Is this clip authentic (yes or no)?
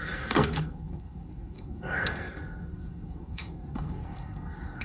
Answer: no